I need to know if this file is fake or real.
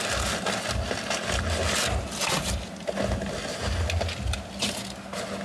real